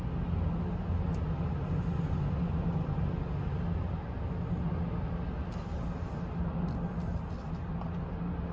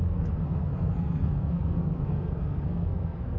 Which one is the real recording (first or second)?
first